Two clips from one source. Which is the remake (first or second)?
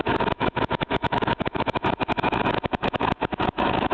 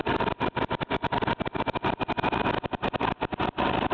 first